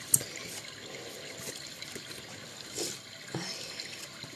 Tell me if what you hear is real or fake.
real